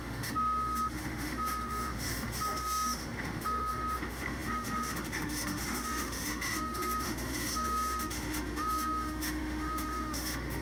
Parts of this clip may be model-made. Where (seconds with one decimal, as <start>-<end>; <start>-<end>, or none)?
0.0-10.6

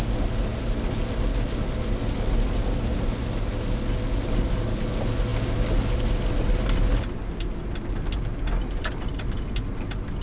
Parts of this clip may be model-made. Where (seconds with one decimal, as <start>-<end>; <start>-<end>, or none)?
none

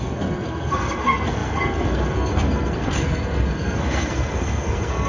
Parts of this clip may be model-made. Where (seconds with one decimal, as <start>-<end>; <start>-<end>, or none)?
0.0-5.1

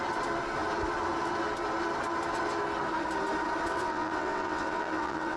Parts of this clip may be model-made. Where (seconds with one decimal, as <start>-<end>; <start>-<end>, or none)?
3.7-5.4

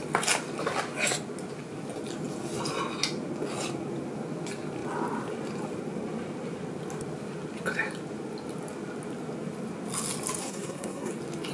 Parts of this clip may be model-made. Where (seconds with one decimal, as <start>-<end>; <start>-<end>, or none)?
10.4-11.1

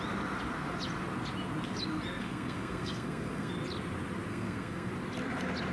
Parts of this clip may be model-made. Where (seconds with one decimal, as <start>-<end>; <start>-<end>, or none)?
2.2-3.5; 4.3-4.9